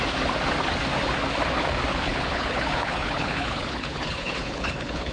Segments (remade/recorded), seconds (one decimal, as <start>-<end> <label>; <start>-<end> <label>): 0.0-1.9 recorded; 1.9-5.1 remade